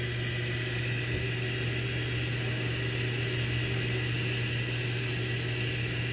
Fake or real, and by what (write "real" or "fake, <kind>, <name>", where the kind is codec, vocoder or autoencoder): real